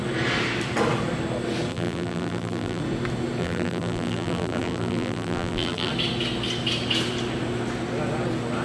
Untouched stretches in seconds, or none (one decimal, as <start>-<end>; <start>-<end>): 0.0-1.7; 2.8-3.4; 5.9-8.6